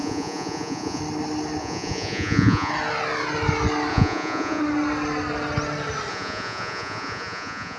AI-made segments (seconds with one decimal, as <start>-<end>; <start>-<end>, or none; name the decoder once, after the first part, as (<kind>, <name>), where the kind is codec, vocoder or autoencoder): 0.0-1.0 (vocoder, Vocos); 1.6-2.7; 3.9-4.6; 6.1-7.8